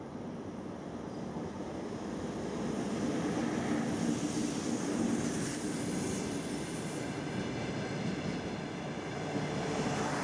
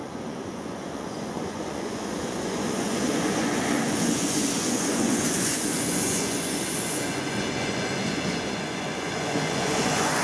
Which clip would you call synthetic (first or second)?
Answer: second